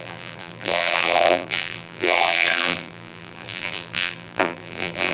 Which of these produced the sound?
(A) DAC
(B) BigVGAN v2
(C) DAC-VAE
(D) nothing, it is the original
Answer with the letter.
B